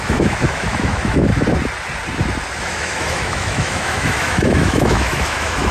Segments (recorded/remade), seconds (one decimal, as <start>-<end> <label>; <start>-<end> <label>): 0.0-1.3 remade; 1.3-2.6 recorded; 2.6-5.7 remade